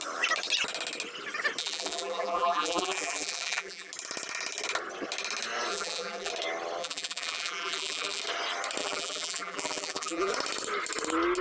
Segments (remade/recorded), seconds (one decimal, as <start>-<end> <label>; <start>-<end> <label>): 0.0-1.6 recorded; 1.6-3.9 remade; 3.9-5.7 recorded; 5.7-6.3 remade; 6.3-6.8 recorded; 6.8-8.2 remade; 8.2-8.8 recorded; 8.8-10.3 remade; 10.3-11.4 recorded